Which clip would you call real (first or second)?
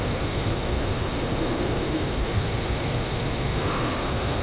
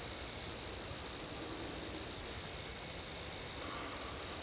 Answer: second